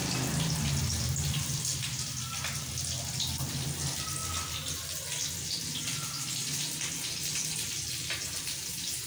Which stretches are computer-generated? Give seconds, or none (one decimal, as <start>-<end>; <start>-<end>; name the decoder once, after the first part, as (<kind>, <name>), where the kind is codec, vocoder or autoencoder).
none